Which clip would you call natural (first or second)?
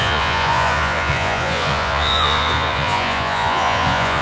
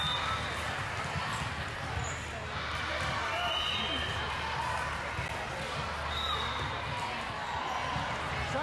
second